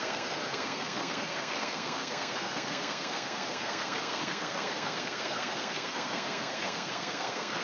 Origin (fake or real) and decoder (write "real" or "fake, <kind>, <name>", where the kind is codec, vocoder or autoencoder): fake, codec, SNAC